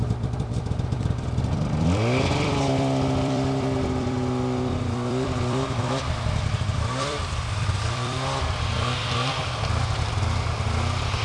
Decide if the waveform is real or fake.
fake